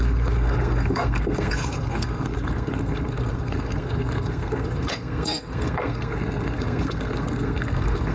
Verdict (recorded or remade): remade